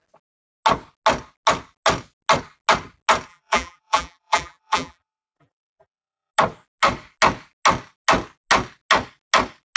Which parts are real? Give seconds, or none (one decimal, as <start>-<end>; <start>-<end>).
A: 0.0-3.3; 6.3-9.8